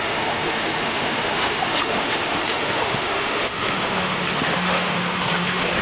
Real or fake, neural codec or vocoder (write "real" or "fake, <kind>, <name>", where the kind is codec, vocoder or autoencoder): fake, autoencoder, DAC-VAE